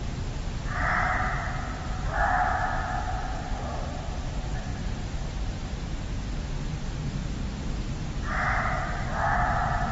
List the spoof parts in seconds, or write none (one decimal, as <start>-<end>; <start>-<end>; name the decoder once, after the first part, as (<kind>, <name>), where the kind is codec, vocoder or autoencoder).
none